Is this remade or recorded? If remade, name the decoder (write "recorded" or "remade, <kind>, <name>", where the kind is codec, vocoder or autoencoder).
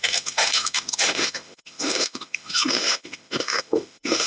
remade, autoencoder, DAC-VAE